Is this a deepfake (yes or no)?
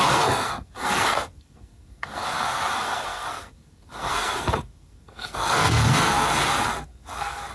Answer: yes